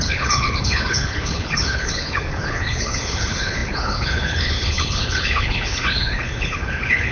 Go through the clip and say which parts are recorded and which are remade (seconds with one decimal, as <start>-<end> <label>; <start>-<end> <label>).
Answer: 0.0-7.1 remade